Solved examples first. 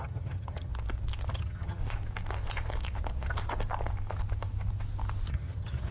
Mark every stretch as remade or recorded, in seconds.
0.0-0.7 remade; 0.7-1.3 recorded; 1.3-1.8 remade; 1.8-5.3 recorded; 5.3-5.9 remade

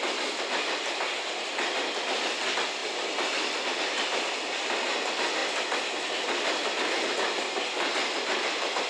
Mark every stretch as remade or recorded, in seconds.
0.0-8.9 recorded

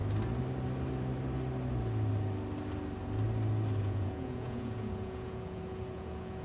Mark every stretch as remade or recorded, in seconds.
0.0-3.8 recorded; 3.8-6.4 remade

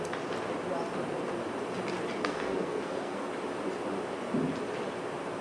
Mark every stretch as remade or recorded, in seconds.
0.0-2.2 recorded; 2.2-3.3 remade; 3.3-5.4 recorded

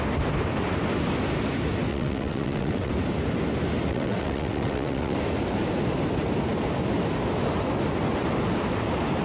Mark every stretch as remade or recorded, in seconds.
0.0-1.9 recorded; 1.9-2.9 remade; 2.9-3.9 recorded; 3.9-5.2 remade; 5.2-9.2 recorded

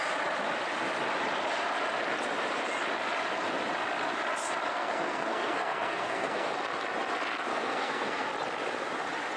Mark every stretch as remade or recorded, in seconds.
0.0-4.7 recorded; 4.7-6.5 remade; 6.5-7.5 recorded; 7.5-8.3 remade; 8.3-9.4 recorded

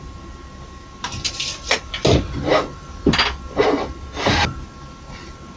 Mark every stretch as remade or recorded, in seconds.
0.0-5.6 recorded

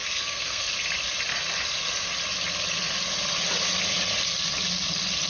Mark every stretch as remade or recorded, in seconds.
0.0-0.7 remade; 0.7-5.3 recorded